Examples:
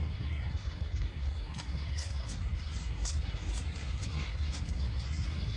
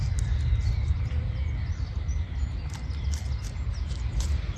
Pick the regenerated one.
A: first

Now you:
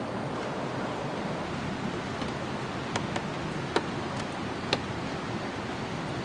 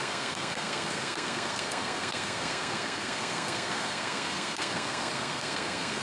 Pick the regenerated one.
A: second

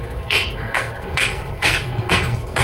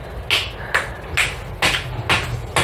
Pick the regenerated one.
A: first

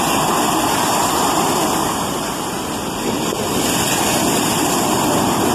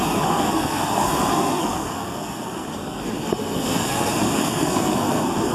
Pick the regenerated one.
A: second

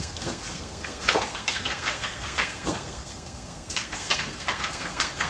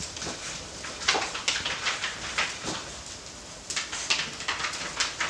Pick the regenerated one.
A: first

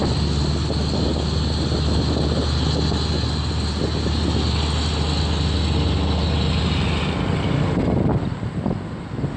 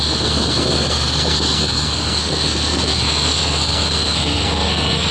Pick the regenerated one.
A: second